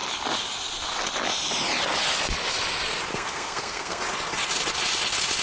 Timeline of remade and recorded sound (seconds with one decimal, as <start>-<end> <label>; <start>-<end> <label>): 0.0-3.1 recorded; 3.1-4.0 remade; 4.0-5.4 recorded